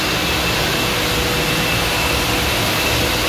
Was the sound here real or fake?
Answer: real